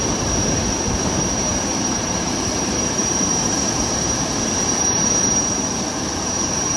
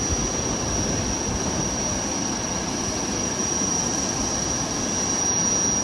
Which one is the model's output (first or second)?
first